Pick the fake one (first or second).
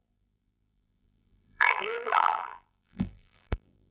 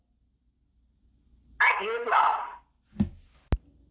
first